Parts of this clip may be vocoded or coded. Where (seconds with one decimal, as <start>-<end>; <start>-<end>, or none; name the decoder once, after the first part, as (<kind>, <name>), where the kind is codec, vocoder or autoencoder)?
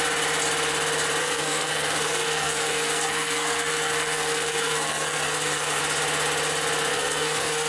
1.2-5.8 (codec, SNAC); 6.9-7.7